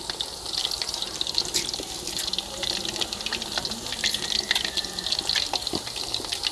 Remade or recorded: recorded